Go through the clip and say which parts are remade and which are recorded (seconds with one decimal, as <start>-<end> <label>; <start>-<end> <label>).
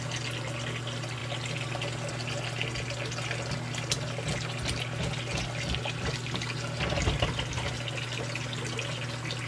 0.0-9.5 recorded